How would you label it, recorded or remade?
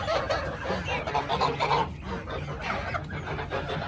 recorded